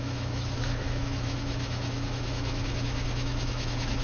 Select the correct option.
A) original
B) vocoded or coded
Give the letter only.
B